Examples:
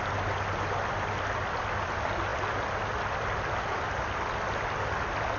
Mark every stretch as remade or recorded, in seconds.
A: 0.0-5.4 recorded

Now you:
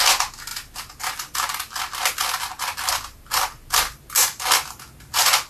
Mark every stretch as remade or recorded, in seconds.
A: 0.0-5.5 recorded

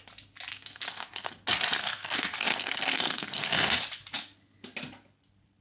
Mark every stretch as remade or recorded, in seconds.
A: 0.0-0.5 recorded; 0.5-1.3 remade; 1.3-1.8 recorded; 1.8-3.8 remade; 3.8-5.6 recorded

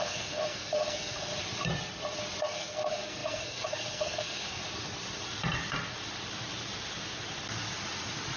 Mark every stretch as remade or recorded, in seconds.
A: 0.0-1.3 remade; 1.3-2.4 recorded; 2.4-4.6 remade; 4.6-8.4 recorded